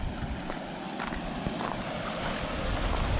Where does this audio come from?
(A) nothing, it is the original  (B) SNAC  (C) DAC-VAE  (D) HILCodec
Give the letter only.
A